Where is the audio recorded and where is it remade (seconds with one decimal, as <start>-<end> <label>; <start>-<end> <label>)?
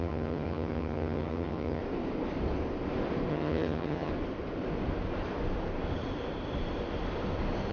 0.0-1.8 remade; 1.8-3.3 recorded; 3.3-4.1 remade; 4.1-7.7 recorded